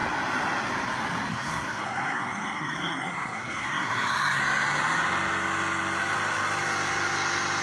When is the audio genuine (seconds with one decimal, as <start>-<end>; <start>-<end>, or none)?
0.0-1.3; 4.4-7.6